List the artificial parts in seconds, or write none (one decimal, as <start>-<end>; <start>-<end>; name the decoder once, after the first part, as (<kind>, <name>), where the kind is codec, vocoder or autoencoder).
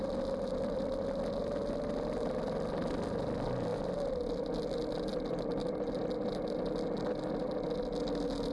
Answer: none